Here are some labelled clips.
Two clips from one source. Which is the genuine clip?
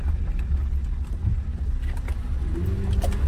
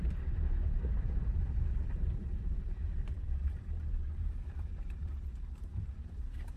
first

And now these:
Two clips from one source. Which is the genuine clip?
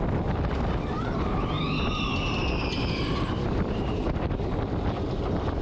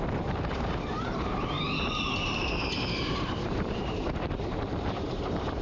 first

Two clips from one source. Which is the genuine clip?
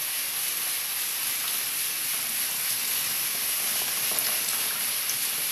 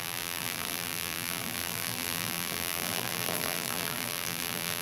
first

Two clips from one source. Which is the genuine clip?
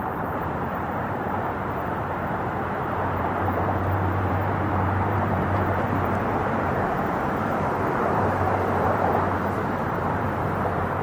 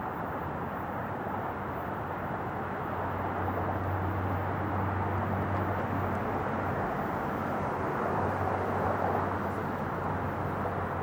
second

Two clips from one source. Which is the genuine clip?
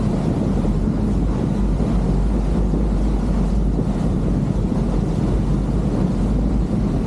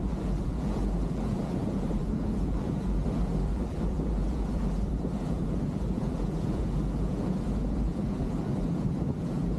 first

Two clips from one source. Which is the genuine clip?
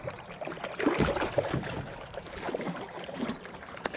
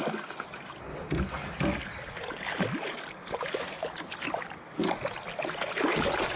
second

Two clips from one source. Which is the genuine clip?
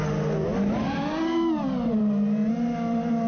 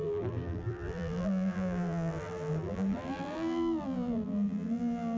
first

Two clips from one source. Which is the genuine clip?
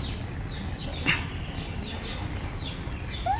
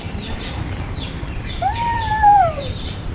first